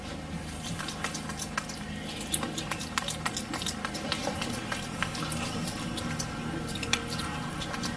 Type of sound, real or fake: real